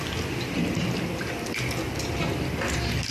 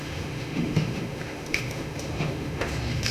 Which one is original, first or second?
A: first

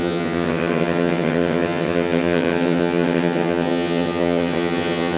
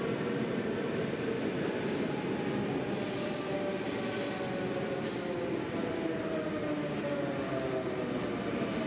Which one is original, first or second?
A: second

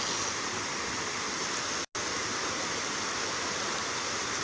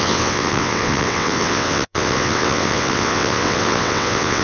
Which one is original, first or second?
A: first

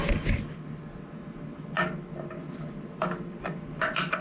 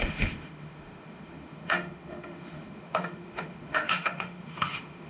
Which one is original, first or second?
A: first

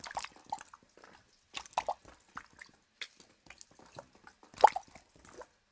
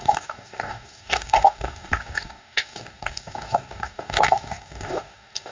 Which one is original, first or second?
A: first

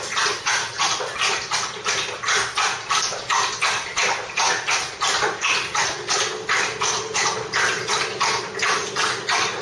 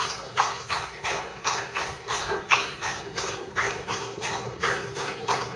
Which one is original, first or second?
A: first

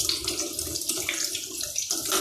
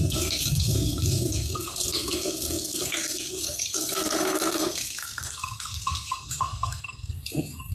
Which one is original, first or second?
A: first